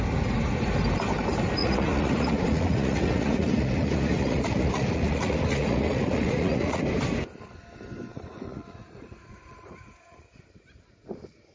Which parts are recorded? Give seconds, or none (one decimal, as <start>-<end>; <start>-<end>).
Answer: 0.0-1.6; 6.8-8.1; 10.2-11.5